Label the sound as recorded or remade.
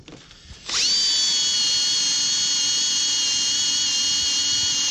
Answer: recorded